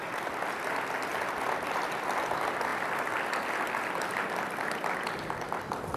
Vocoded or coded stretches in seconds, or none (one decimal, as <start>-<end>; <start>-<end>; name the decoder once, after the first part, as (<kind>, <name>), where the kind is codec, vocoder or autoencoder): none